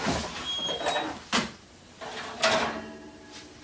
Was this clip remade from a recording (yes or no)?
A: no